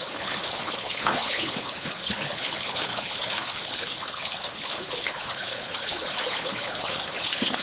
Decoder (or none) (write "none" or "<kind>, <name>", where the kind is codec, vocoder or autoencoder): codec, HILCodec